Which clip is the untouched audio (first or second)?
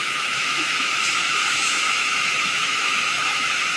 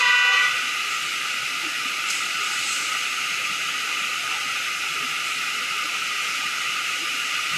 second